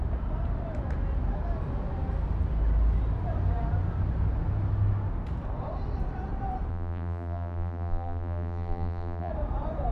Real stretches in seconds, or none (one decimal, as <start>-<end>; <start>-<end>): 0.0-6.7; 9.3-9.9